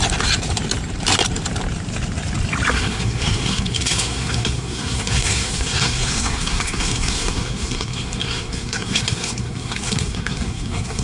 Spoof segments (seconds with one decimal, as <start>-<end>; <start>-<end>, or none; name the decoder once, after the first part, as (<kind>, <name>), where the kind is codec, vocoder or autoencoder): 2.7-11.0 (codec, SNAC)